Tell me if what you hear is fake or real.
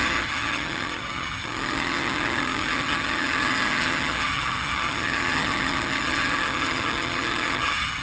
fake